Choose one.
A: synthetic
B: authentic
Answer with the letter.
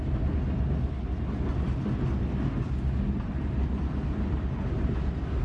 B